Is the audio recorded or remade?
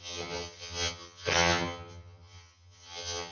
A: remade